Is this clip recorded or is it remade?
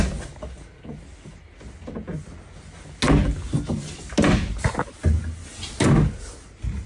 recorded